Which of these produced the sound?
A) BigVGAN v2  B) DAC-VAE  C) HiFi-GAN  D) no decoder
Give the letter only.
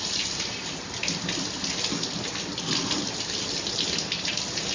D